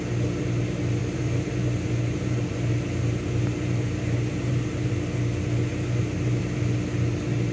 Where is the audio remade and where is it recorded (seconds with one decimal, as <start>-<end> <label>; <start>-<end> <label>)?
0.0-1.0 recorded; 1.0-4.9 remade; 4.9-5.7 recorded; 5.7-6.4 remade; 6.4-7.5 recorded